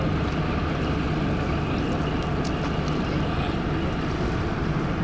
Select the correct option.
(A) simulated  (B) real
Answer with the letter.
B